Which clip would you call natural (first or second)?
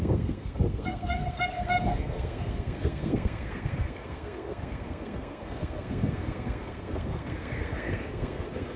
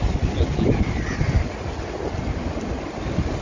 second